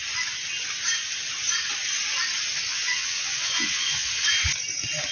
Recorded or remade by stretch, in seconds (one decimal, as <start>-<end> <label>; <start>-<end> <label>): 0.0-2.7 recorded; 2.7-4.1 remade; 4.1-5.1 recorded